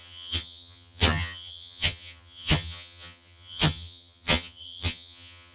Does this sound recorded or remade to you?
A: remade